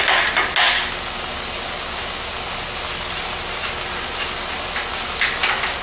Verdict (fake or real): real